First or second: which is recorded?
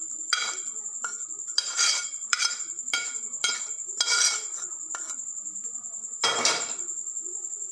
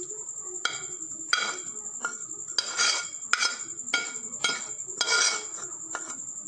second